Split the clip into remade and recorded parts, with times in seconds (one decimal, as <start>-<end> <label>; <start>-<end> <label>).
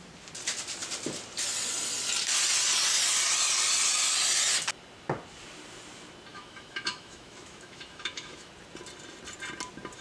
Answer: 0.0-6.3 recorded; 6.3-8.5 remade; 8.5-10.0 recorded